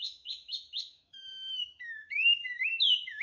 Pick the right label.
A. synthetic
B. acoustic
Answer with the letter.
A